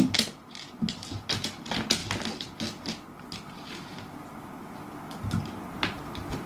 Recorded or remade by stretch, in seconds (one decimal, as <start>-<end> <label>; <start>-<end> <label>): 0.0-6.5 recorded